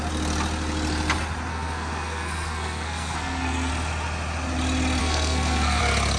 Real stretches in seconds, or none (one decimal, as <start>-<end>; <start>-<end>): 0.0-1.5; 3.7-5.0; 5.8-6.2